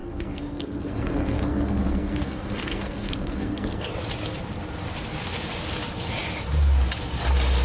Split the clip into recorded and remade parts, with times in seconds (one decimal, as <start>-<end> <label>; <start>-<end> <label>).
0.0-3.9 remade; 3.9-7.6 recorded